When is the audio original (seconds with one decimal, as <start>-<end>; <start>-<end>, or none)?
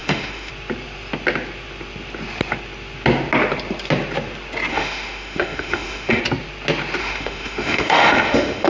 0.5-4.7; 6.2-7.0